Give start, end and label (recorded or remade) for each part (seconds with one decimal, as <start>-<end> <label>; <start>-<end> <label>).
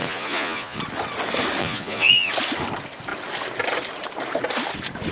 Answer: 0.0-0.8 remade; 0.8-1.6 recorded; 1.6-2.3 remade; 2.3-5.1 recorded